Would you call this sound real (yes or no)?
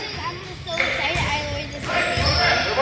yes